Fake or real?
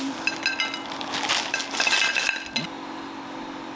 real